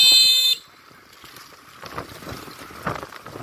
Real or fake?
real